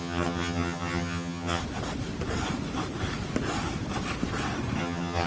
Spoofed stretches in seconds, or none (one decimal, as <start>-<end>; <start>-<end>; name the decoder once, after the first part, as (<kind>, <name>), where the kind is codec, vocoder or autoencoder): 0.0-1.6 (vocoder, HiFi-GAN); 4.8-5.3